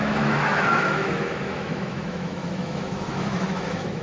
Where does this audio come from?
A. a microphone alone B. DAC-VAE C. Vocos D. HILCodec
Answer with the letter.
B